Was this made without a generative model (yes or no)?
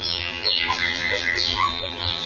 no